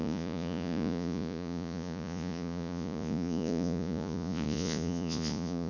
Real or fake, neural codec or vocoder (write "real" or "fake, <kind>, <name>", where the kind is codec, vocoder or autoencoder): fake, vocoder, Vocos